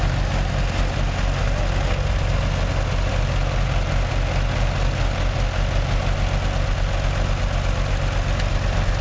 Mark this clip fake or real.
real